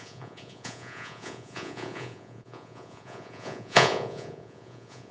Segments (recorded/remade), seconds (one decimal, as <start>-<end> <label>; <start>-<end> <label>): 0.0-5.1 remade

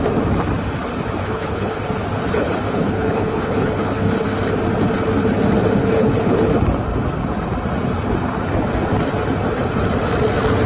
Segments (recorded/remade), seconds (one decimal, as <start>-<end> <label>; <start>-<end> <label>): 0.0-1.2 recorded; 1.2-1.8 remade; 1.8-2.2 recorded; 2.2-4.1 remade; 4.1-5.8 recorded; 5.8-6.4 remade; 6.4-10.7 recorded